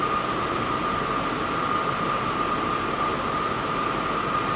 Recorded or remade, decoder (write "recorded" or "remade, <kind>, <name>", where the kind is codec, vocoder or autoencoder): recorded